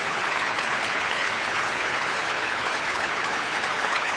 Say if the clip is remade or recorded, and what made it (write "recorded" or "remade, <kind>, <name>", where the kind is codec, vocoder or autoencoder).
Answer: remade, codec, HILCodec